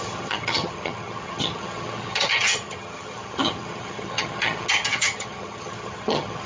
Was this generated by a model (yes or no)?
yes